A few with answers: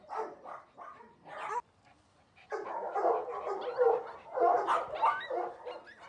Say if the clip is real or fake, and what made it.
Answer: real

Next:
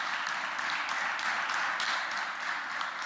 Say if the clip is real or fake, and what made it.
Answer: real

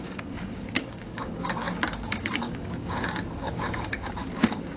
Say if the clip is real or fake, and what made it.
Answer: fake, codec, DAC